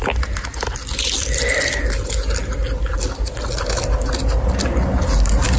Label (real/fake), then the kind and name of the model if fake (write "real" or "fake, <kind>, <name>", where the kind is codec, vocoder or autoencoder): real